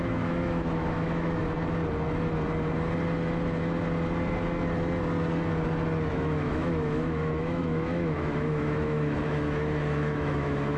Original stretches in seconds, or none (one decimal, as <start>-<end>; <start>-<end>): 1.4-6.1